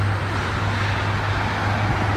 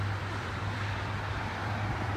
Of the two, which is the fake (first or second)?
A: second